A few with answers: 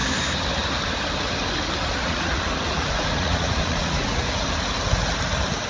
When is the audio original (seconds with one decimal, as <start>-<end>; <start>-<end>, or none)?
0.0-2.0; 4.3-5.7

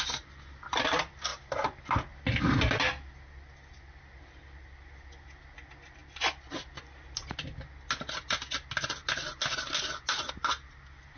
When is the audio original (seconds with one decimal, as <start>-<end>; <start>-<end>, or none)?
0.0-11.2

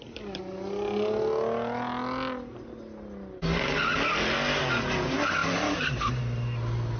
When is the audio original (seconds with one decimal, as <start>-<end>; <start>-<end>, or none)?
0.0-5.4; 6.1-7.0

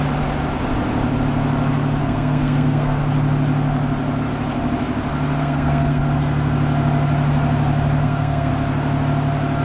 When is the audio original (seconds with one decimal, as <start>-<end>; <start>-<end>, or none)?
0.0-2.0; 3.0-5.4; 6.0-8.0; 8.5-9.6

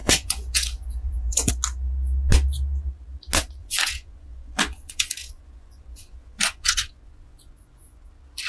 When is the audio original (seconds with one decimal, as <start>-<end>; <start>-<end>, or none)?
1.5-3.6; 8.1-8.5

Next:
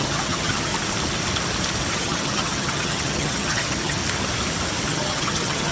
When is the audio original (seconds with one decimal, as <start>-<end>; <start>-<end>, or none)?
0.7-1.9; 4.0-4.9